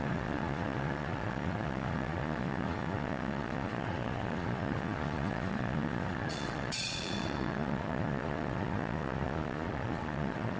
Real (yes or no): no